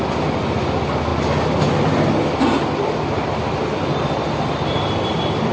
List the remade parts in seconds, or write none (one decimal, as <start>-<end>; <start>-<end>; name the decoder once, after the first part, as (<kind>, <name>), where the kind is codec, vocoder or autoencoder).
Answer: none